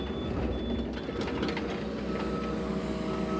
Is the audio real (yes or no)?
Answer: yes